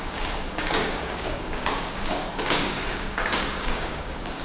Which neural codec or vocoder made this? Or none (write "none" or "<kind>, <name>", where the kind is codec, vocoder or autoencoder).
codec, DAC